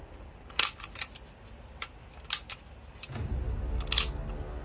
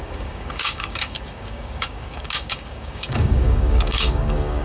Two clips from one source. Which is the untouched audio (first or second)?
first